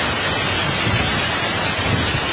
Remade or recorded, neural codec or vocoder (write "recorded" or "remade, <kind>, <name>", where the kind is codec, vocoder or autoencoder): recorded